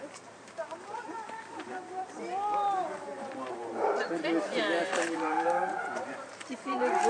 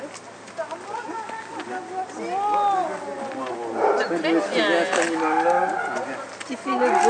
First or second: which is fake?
first